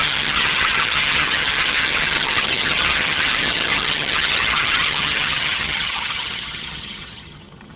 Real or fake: fake